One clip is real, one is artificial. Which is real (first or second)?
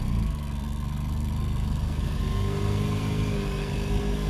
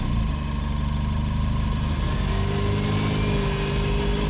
second